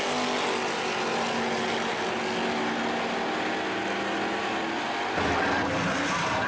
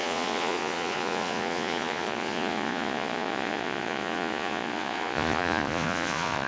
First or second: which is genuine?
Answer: first